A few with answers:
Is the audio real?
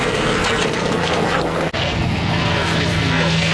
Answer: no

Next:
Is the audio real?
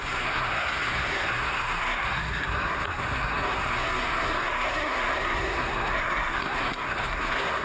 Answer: no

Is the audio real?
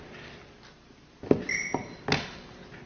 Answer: yes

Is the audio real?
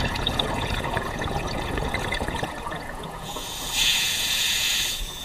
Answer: no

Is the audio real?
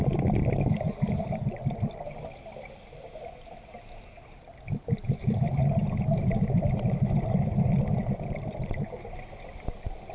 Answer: yes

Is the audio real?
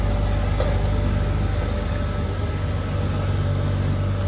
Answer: yes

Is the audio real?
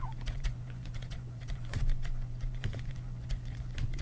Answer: no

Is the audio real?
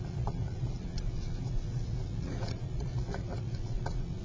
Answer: no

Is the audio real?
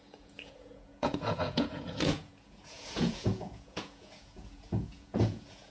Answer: no